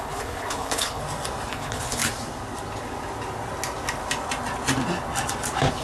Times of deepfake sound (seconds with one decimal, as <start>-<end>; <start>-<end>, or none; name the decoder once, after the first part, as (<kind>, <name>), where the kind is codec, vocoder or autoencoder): 0.0-1.0 (codec, HILCodec); 1.5-2.0